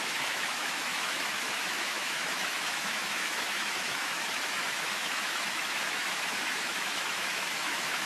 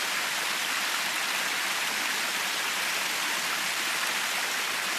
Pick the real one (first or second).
second